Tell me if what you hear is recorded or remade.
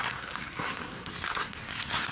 remade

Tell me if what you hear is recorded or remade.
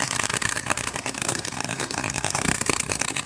remade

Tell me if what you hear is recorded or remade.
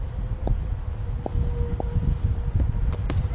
recorded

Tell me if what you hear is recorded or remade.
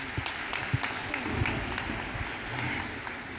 recorded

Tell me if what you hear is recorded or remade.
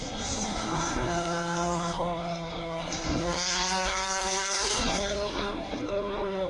remade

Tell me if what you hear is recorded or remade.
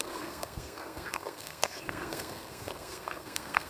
remade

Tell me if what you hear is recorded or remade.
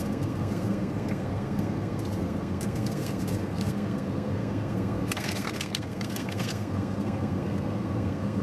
remade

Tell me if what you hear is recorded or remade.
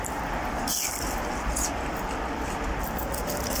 recorded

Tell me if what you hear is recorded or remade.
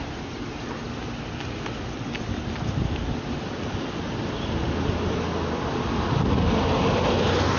recorded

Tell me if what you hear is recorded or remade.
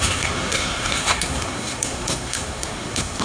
remade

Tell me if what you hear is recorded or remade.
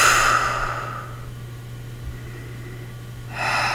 recorded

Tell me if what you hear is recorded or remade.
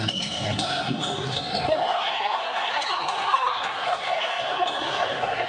remade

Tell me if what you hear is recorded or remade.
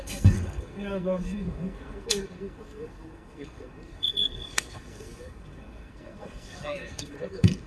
remade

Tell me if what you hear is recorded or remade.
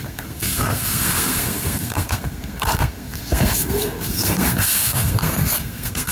remade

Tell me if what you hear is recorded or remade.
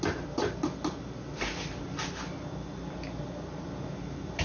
recorded